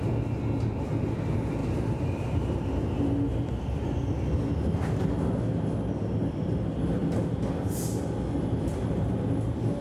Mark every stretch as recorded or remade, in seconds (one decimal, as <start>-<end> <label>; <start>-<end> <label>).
0.0-1.6 recorded; 1.6-2.7 remade; 2.7-9.8 recorded